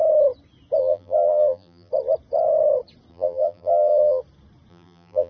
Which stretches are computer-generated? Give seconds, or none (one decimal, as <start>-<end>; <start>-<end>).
0.8-1.9; 3.1-4.2; 4.7-5.3